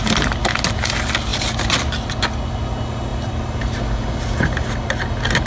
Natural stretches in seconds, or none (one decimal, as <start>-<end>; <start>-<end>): 0.0-5.5